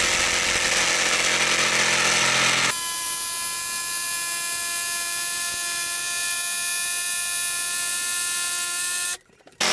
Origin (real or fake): real